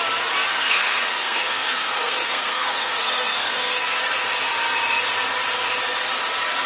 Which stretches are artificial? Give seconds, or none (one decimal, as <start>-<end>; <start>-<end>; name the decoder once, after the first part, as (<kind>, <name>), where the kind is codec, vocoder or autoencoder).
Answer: 0.5-4.0 (codec, SNAC)